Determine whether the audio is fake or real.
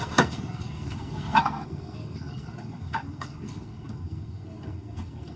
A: fake